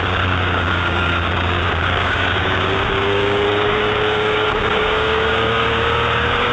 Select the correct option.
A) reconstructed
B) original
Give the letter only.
A